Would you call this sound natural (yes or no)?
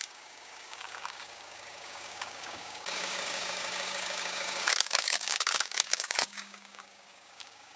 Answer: no